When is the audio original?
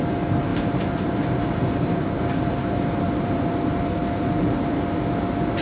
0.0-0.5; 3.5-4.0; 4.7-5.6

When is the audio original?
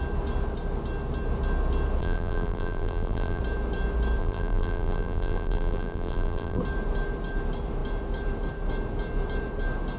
0.0-2.0; 3.4-4.2; 6.6-10.0